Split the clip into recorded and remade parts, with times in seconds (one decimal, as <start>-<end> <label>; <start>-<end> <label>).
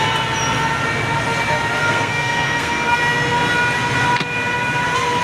0.0-1.8 recorded; 1.8-3.0 remade; 3.0-5.2 recorded